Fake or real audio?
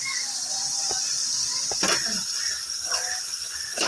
real